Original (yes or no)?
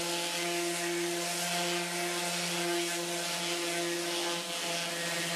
yes